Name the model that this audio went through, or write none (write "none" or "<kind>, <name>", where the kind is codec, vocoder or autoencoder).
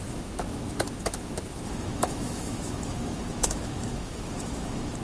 autoencoder, DAC-VAE